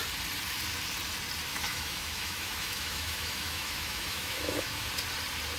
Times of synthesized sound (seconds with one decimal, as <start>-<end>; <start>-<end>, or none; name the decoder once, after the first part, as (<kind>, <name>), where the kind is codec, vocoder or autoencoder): 1.5-4.9 (autoencoder, DAC-VAE)

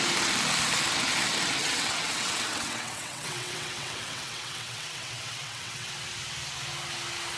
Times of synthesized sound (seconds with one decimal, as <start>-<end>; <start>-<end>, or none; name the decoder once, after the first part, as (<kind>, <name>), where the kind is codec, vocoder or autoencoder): 1.6-5.9 (vocoder, WaveNeXt)

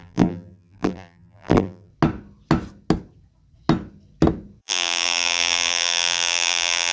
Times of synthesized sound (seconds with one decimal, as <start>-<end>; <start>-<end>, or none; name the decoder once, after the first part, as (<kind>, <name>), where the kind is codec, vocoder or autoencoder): 0.0-1.9 (vocoder, BigVGAN v2); 4.6-6.9

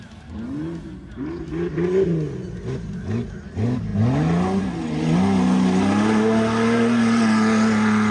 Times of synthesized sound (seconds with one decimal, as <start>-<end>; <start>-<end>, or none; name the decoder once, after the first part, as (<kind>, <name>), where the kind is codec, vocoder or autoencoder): none

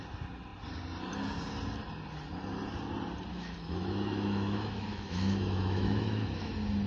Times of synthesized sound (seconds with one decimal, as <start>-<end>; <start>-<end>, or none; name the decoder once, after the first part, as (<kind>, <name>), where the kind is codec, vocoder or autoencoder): 3.3-6.5 (autoencoder, DAC-VAE)